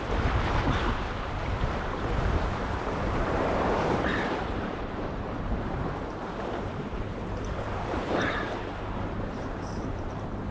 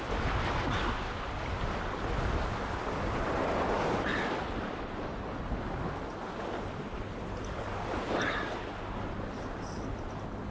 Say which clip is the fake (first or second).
first